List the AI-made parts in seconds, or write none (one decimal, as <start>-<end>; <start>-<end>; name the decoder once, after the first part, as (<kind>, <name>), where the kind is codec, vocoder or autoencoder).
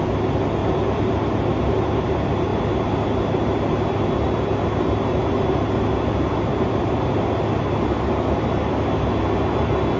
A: 0.6-1.1 (vocoder, BigVGAN v2)